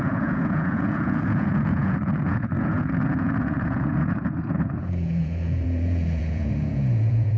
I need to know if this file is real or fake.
fake